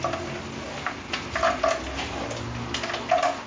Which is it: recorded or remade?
recorded